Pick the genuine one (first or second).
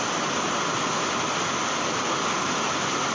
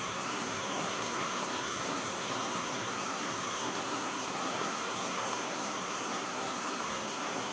first